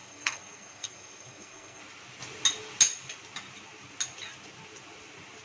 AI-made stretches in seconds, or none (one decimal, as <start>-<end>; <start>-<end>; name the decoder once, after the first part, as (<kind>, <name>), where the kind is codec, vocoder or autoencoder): 0.0-1.8 (codec, SNAC)